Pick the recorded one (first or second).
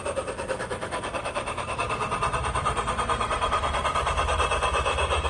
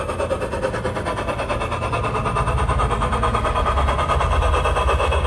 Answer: second